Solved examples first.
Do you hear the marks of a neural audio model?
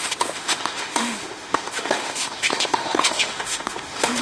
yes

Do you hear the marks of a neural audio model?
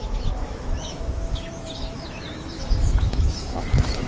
yes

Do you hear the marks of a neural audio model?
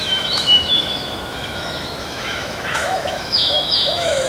yes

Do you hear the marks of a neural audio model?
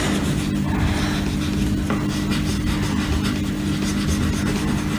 no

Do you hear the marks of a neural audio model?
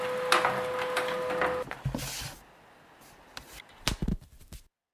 no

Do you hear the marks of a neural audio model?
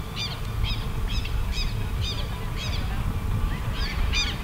no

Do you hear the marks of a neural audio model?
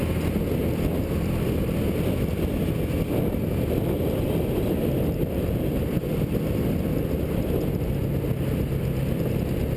no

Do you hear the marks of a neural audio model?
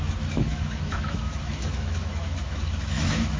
yes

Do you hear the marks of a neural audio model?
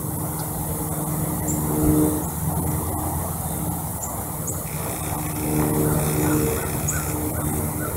no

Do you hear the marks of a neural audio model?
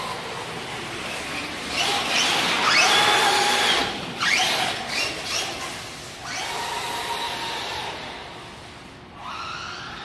no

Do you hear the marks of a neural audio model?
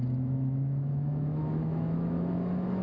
yes